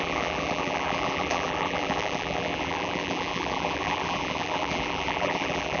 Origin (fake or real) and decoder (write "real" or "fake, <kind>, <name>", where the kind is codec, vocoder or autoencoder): fake, vocoder, BigVGAN v2